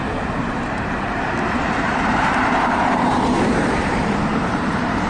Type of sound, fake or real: fake